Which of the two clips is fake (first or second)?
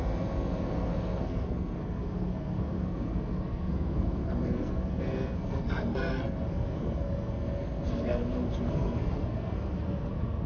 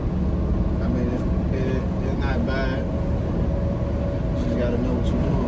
first